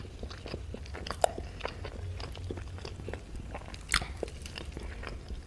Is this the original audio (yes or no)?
yes